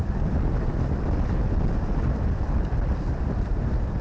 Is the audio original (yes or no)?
yes